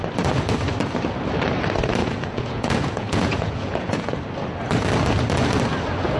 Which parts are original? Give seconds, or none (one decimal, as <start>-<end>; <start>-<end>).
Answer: 0.0-2.0; 4.1-6.2